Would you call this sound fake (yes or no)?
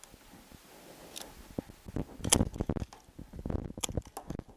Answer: no